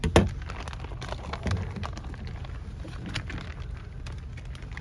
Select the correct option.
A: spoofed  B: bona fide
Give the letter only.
B